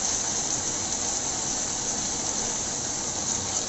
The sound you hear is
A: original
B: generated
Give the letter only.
A